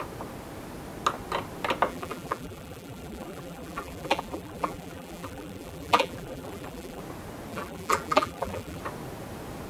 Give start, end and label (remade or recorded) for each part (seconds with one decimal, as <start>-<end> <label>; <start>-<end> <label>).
0.0-1.9 recorded; 1.9-7.0 remade; 7.0-7.5 recorded; 7.5-8.8 remade; 8.8-9.7 recorded